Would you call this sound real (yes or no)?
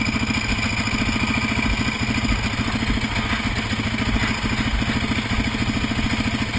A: yes